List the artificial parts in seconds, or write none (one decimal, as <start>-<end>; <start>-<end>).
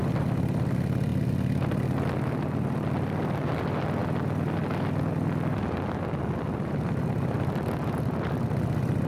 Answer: none